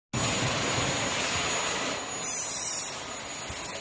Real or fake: real